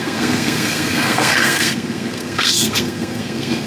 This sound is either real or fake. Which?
fake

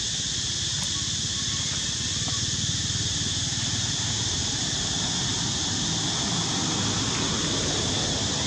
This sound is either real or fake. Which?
real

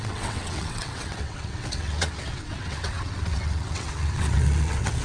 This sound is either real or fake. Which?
fake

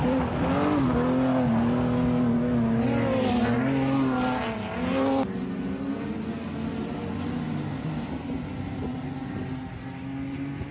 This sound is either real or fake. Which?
real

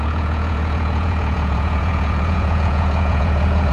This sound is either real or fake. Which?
fake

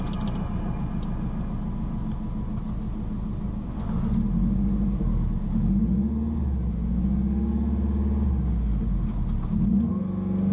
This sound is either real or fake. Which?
real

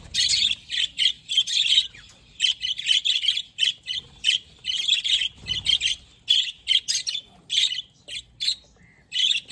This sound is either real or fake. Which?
real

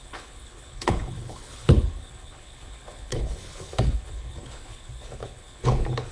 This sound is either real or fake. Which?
fake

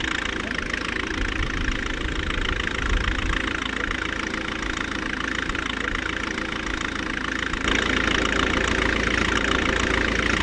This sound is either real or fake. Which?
real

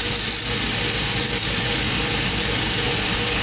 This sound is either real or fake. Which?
real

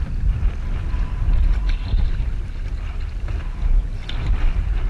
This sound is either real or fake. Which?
real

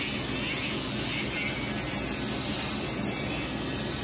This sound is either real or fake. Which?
real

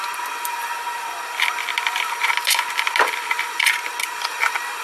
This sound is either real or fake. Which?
real